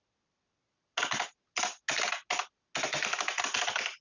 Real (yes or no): yes